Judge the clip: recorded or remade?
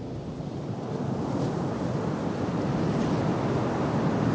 recorded